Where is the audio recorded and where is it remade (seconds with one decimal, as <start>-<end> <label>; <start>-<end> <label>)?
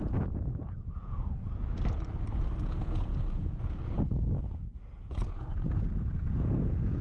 0.0-1.4 remade; 1.4-2.6 recorded; 2.6-7.0 remade